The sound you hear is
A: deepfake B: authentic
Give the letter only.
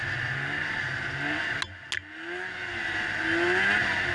B